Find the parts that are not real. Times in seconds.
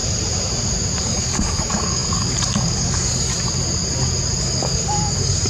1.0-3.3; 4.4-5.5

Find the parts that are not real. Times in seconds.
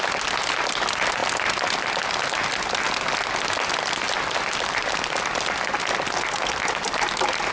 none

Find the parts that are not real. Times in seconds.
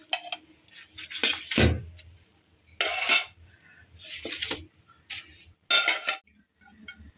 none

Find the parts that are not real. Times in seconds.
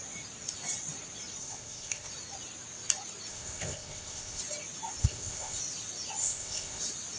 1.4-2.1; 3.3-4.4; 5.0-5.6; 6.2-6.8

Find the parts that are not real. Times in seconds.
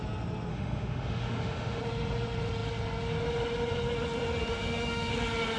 0.5-1.8; 4.4-5.1